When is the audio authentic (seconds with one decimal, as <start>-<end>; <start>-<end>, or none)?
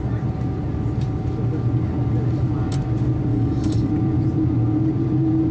0.0-3.3; 3.9-5.5